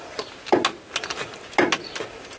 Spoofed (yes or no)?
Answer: no